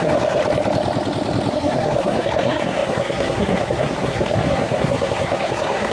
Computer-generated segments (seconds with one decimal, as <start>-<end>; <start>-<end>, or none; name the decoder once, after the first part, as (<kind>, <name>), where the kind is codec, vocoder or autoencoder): 0.0-0.4 (codec, SNAC); 1.5-5.9